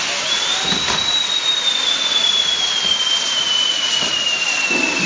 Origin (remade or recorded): recorded